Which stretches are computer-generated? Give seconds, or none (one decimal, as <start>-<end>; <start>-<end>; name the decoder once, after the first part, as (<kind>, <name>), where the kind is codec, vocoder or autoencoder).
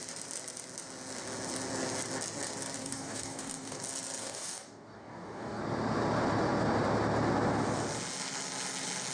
2.8-3.8 (codec, DAC); 4.2-5.6